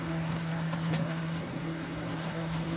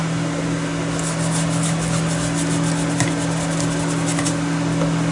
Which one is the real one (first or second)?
second